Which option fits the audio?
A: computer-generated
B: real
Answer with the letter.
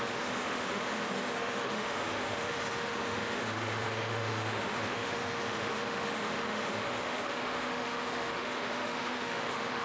A